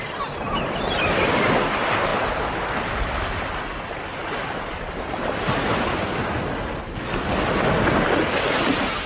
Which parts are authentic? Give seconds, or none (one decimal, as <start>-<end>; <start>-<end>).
0.0-9.1